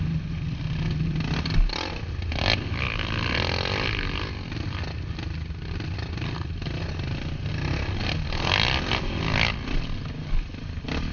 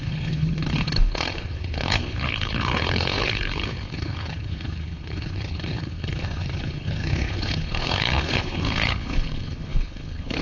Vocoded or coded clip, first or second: second